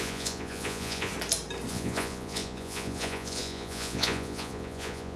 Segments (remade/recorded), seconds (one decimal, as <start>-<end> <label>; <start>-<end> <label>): 0.0-1.1 remade; 1.1-1.7 recorded; 1.7-5.2 remade